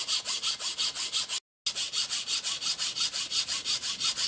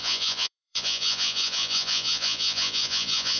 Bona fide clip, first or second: first